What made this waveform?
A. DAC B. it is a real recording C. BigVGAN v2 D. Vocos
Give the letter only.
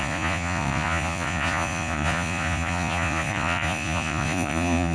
D